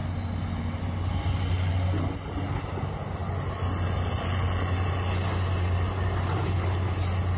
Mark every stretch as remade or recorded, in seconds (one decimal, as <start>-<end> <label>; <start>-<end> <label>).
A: 0.0-7.4 recorded